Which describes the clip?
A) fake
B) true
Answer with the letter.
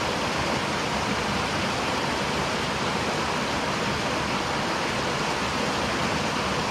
B